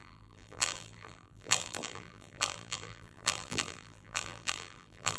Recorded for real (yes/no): no